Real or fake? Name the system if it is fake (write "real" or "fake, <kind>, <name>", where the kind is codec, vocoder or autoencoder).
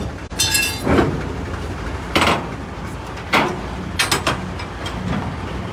real